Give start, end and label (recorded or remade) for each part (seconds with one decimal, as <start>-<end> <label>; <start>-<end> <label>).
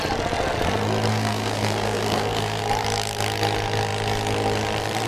0.0-1.1 recorded; 1.1-2.6 remade; 2.6-5.1 recorded